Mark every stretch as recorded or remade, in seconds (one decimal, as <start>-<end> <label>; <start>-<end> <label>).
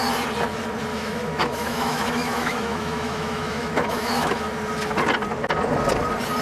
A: 0.0-0.9 recorded; 0.9-4.4 remade; 4.4-6.4 recorded